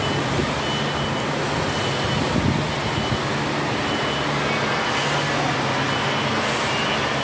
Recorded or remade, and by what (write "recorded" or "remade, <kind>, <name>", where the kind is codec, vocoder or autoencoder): recorded